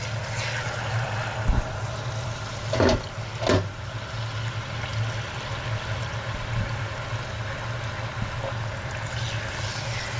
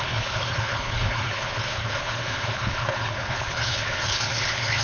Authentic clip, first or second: first